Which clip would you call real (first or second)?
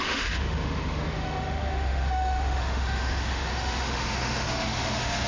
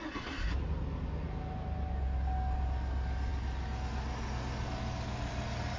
second